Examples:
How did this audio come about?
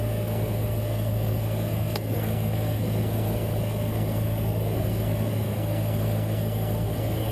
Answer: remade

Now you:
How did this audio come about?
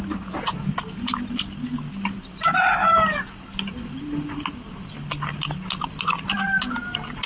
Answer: recorded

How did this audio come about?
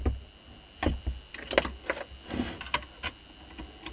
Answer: recorded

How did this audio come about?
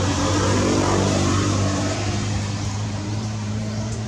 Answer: remade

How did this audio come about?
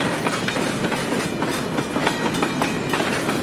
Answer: recorded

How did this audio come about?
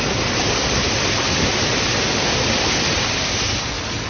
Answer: remade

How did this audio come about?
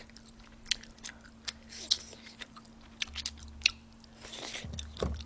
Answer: recorded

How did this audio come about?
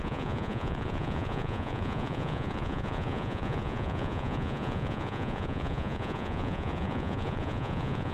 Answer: remade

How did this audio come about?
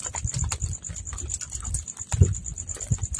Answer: recorded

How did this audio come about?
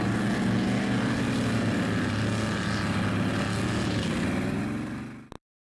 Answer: recorded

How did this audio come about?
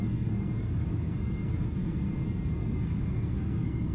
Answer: remade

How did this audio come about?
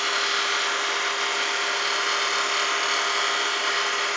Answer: recorded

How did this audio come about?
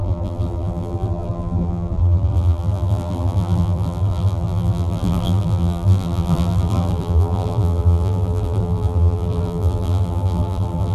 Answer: remade